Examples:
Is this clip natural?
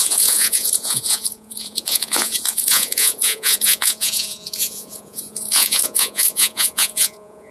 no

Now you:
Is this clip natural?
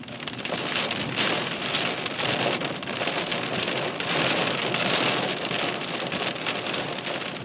yes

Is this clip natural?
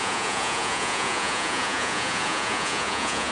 no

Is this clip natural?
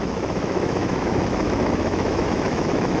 no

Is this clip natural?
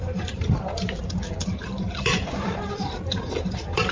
no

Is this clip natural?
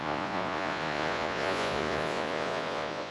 no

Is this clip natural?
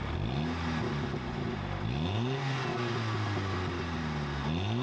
yes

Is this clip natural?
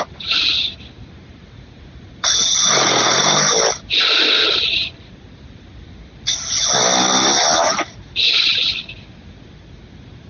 yes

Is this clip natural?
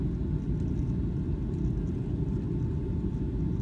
yes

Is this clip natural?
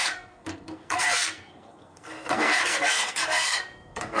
no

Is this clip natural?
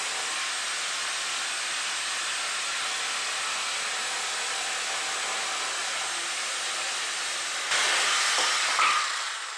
yes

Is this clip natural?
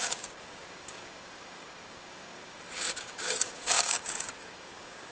no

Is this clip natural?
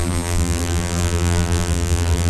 no